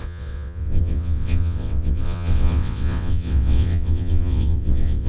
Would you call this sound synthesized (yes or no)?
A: yes